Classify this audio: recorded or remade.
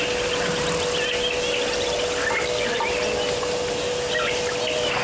recorded